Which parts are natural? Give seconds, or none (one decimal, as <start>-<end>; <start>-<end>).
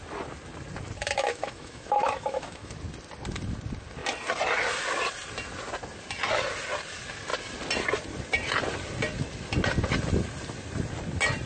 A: 0.0-1.0; 2.7-11.5